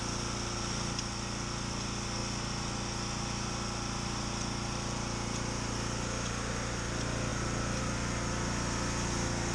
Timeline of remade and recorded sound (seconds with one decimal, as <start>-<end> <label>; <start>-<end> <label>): 0.0-9.5 recorded